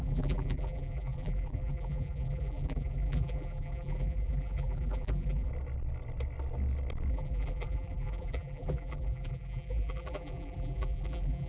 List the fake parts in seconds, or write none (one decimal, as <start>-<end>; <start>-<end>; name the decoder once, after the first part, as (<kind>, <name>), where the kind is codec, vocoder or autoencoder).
0.0-5.5 (vocoder, BigVGAN v2); 7.1-11.5